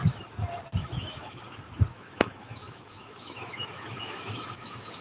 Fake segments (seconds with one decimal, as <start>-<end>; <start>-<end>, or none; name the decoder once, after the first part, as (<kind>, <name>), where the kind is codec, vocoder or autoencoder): 0.8-1.4 (autoencoder, DAC-VAE); 1.9-5.0